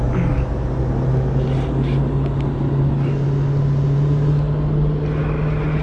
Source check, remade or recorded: recorded